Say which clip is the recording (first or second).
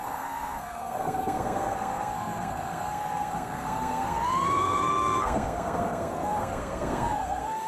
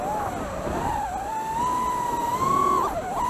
second